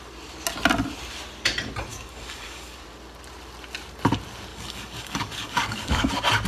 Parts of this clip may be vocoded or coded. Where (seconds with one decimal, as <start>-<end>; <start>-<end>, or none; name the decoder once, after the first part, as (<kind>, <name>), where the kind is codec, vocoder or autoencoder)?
1.9-2.8 (codec, DAC); 4.5-6.1